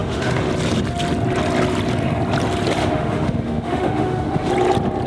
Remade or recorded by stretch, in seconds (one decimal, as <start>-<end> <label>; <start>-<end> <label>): 0.0-0.5 remade; 0.5-2.8 recorded; 2.8-4.5 remade; 4.5-5.1 recorded